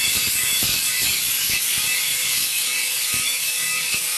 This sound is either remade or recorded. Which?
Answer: remade